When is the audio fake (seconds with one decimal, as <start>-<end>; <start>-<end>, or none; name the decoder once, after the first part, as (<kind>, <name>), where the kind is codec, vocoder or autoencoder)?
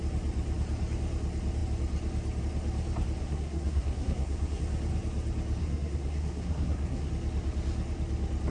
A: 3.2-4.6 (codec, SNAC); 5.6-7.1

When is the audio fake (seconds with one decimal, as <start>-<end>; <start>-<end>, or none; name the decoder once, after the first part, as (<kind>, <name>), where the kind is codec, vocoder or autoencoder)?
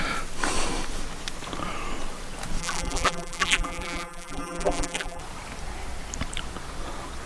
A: 2.6-5.2 (vocoder, BigVGAN v2)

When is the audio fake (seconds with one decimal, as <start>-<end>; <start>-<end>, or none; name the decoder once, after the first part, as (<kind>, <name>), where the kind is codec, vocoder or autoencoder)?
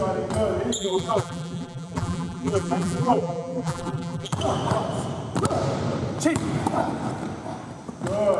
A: 0.8-4.3 (vocoder, BigVGAN v2)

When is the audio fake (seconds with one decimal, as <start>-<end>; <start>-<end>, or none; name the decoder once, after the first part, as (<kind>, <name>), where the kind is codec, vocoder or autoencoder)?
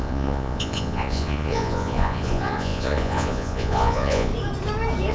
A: 0.0-4.3 (vocoder, Vocos)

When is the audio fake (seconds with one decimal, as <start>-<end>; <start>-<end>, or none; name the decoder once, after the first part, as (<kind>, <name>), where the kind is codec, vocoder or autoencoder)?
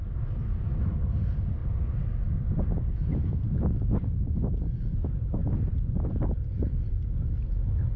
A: none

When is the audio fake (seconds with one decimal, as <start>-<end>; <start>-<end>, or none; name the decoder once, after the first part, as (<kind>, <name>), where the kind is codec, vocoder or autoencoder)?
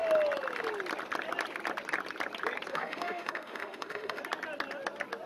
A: 2.7-4.2 (autoencoder, DAC-VAE)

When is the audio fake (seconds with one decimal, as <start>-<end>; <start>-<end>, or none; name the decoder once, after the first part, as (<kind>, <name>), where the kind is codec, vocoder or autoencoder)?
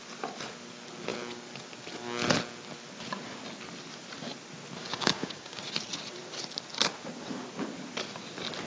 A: 4.8-5.6 (codec, DAC)